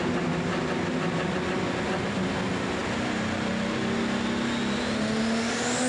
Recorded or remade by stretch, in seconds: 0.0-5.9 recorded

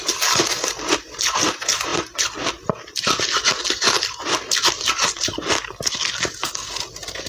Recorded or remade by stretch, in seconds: 0.0-7.3 recorded

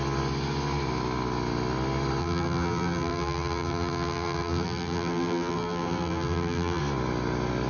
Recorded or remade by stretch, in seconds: 0.0-2.2 recorded; 2.2-6.8 remade; 6.8-7.7 recorded

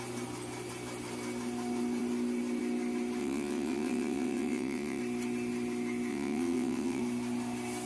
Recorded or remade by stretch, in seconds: 0.0-3.2 recorded; 3.2-5.0 remade; 5.0-6.1 recorded; 6.1-7.0 remade; 7.0-7.9 recorded

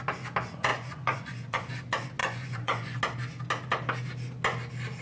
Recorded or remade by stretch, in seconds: 0.0-0.7 recorded; 0.7-1.7 remade; 1.7-2.2 recorded; 2.2-3.0 remade; 3.0-5.0 recorded

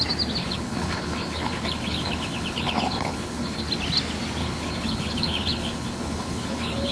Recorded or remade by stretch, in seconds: 0.0-0.4 recorded; 0.4-3.6 remade; 3.6-4.4 recorded; 4.4-6.9 remade

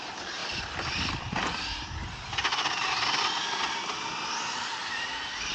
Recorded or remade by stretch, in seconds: 0.0-5.5 recorded